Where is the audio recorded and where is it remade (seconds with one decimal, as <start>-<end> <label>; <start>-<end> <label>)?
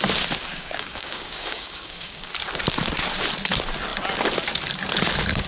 0.0-0.5 recorded; 0.5-2.3 remade; 2.3-5.5 recorded